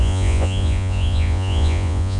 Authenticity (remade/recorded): remade